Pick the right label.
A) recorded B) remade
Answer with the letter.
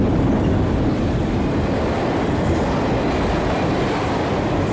A